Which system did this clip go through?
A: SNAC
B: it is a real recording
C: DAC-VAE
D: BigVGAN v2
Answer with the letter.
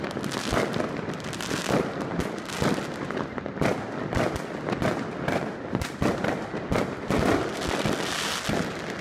B